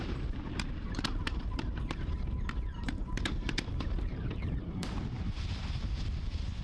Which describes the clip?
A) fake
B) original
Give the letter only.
A